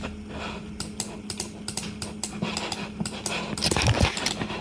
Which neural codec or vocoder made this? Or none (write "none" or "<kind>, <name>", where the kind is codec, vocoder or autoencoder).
none